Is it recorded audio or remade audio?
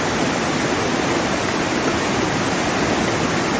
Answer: recorded